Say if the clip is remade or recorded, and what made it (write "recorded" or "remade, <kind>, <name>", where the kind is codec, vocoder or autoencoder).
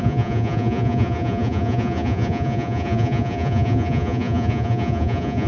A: remade, vocoder, Vocos